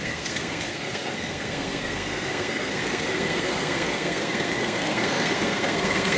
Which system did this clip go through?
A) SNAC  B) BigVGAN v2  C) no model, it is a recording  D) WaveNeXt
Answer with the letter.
A